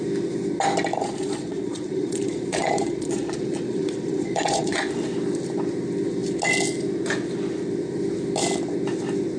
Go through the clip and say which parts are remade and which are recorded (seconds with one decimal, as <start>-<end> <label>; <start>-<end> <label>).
0.0-0.9 recorded; 0.9-4.9 remade; 4.9-9.4 recorded